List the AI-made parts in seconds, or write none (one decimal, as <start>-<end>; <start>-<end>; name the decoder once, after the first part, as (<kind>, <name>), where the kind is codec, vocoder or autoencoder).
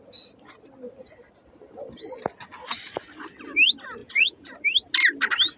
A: 4.0-4.5 (vocoder, Vocos)